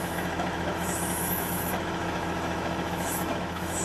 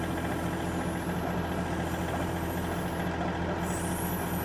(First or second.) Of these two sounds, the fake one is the first